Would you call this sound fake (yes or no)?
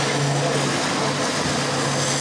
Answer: no